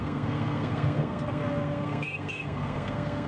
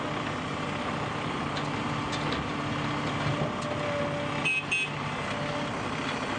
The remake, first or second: first